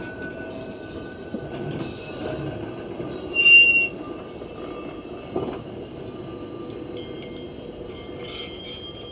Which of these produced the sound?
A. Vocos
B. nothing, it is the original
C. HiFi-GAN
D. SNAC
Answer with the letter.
B